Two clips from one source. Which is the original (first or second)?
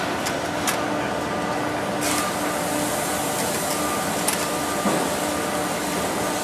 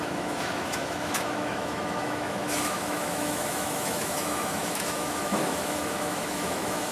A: first